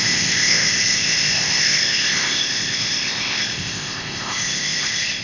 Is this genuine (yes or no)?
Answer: no